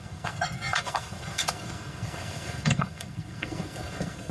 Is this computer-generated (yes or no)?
yes